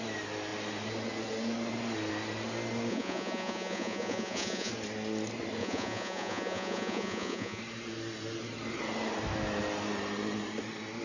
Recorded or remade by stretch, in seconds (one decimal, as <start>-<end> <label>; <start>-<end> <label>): 0.0-2.9 recorded; 2.9-4.7 remade; 4.7-5.6 recorded; 5.6-7.6 remade; 7.6-11.0 recorded